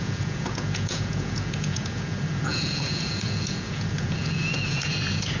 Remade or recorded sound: remade